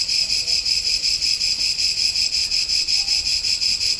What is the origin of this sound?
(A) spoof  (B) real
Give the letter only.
A